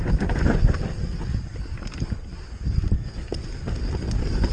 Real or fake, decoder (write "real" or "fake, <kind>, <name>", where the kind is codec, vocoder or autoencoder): real